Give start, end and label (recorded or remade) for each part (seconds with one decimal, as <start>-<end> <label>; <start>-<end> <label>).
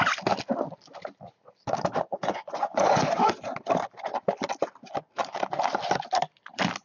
0.0-2.1 recorded; 2.1-3.3 remade; 3.3-6.8 recorded